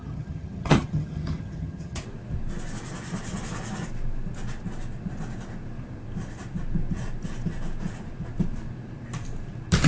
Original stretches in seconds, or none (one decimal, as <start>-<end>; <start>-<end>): 2.0-9.9

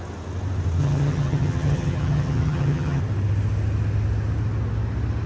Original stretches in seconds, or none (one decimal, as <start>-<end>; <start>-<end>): 0.0-0.8; 3.0-5.3

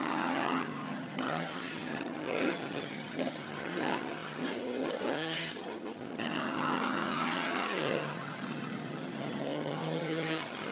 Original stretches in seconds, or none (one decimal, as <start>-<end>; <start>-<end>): none

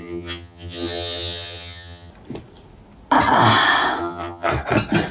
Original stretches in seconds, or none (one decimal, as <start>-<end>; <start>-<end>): 2.1-4.0; 4.5-5.1

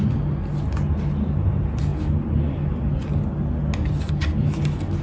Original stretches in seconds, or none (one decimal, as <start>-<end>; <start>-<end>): 0.0-5.0

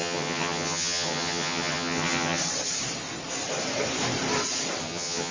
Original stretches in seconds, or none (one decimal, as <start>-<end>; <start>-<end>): 2.4-4.8

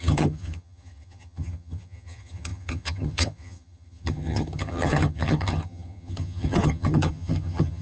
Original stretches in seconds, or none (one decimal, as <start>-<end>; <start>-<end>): none